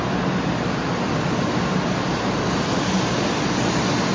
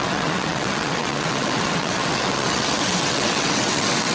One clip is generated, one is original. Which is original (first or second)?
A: first